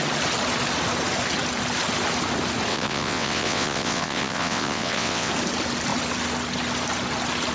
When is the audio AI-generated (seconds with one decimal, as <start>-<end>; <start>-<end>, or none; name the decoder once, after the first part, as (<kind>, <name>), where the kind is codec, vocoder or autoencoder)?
2.7-5.3 (vocoder, WaveNeXt)